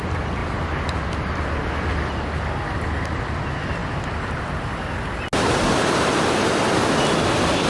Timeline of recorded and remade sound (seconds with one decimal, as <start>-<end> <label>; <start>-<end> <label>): 0.0-7.7 recorded